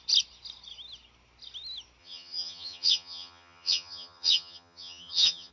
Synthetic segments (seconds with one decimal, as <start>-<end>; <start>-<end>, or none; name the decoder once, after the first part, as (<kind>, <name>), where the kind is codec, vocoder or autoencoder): 2.0-5.5 (vocoder, HiFi-GAN)